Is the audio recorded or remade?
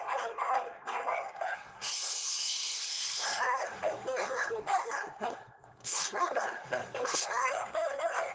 remade